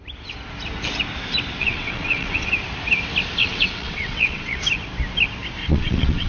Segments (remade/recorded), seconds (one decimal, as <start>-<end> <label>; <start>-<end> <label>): 0.0-1.6 recorded; 1.6-2.5 remade; 2.5-3.4 recorded; 3.4-4.6 remade; 4.6-5.6 recorded; 5.6-6.3 remade